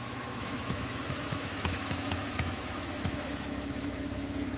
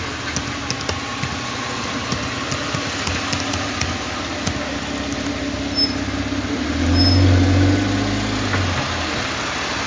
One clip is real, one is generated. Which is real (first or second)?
second